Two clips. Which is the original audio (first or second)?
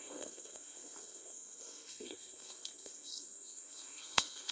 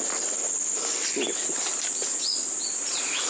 second